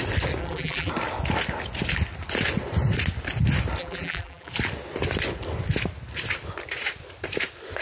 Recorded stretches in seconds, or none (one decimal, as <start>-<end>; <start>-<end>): 0.0-0.4; 0.9-3.8; 4.5-7.8